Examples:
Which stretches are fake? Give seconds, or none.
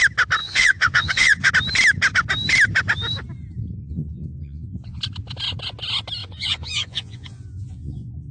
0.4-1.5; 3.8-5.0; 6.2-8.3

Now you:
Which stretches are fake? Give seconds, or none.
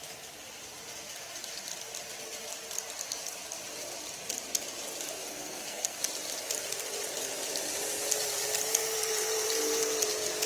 5.3-6.0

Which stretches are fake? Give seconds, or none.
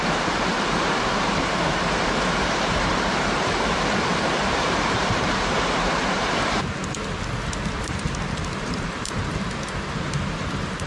0.0-6.8; 7.9-10.9